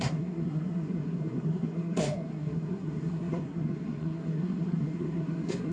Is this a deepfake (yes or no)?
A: yes